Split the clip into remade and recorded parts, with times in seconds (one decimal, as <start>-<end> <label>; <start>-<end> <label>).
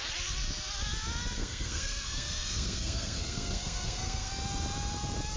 0.0-1.4 recorded; 1.4-4.3 remade; 4.3-5.4 recorded